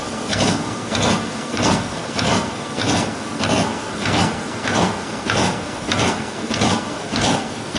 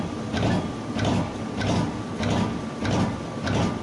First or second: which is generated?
first